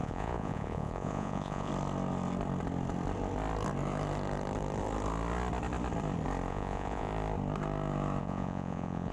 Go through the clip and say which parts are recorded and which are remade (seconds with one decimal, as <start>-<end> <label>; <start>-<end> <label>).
0.0-1.7 remade; 1.7-6.5 recorded; 6.5-7.1 remade; 7.1-8.2 recorded; 8.2-9.1 remade